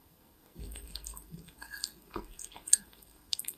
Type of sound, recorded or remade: remade